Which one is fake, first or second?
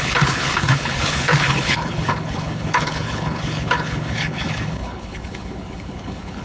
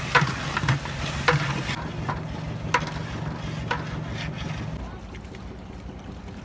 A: first